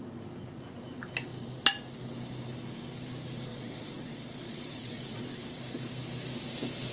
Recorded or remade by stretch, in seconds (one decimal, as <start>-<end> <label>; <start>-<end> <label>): 0.0-3.5 recorded; 3.5-5.2 remade; 5.2-6.9 recorded